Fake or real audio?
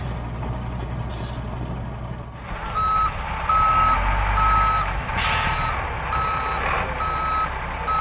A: real